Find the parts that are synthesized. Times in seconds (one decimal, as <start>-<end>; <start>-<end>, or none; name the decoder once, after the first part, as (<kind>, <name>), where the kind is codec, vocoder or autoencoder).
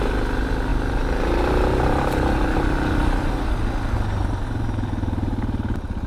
none